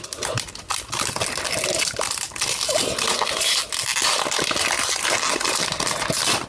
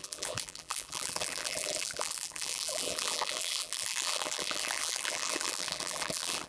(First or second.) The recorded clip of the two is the first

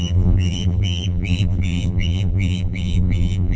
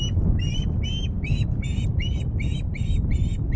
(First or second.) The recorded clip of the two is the second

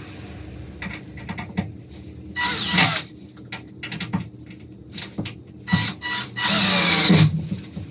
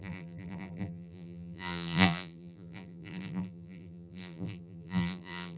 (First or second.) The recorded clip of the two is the first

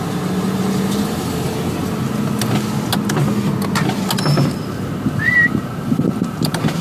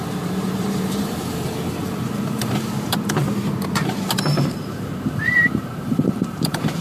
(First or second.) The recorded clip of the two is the first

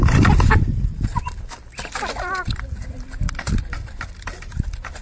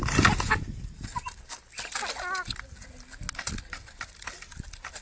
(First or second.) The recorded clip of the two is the second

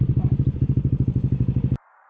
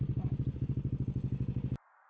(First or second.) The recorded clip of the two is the second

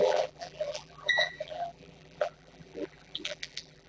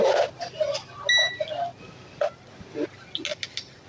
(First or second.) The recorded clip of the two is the second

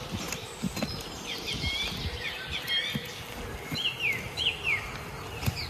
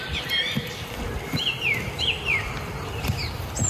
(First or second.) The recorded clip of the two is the first